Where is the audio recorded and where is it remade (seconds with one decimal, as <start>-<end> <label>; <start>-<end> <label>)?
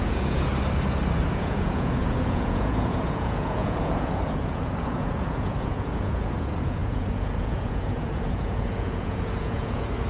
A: 0.0-0.5 remade; 0.5-1.3 recorded; 1.3-10.1 remade